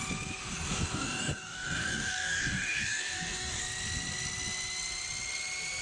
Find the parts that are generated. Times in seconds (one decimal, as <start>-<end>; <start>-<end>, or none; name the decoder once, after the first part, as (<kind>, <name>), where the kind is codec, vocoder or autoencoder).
0.4-3.6 (codec, DAC)